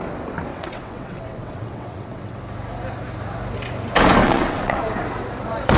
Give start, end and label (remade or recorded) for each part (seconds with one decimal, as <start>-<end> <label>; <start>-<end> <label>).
0.0-0.5 recorded; 0.5-2.4 remade; 2.4-4.2 recorded; 4.2-4.8 remade; 4.8-5.8 recorded